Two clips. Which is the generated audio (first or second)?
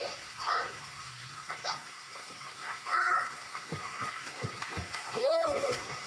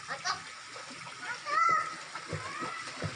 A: first